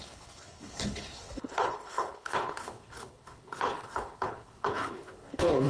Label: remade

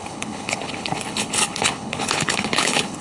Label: remade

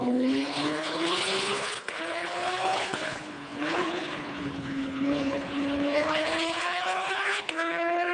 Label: remade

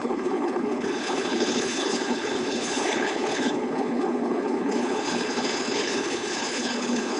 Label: remade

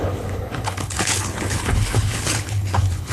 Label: remade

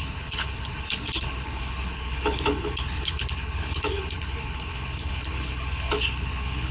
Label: remade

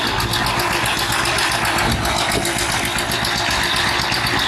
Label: recorded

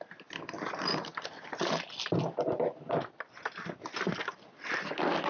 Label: recorded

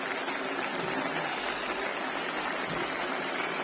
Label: recorded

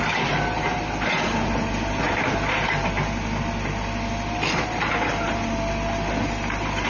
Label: recorded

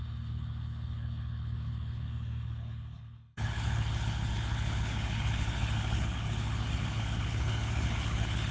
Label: remade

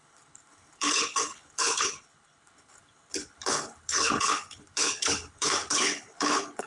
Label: remade